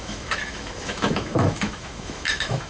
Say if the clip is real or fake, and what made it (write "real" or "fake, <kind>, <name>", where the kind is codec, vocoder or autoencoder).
fake, autoencoder, DAC-VAE